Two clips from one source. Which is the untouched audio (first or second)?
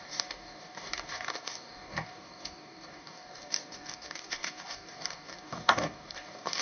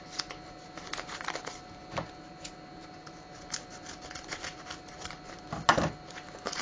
second